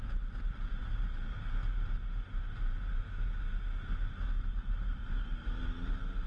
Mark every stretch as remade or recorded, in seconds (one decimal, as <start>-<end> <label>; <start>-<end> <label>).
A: 0.0-5.1 recorded; 5.1-5.6 remade; 5.6-6.3 recorded